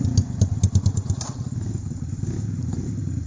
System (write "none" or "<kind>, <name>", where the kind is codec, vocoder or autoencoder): none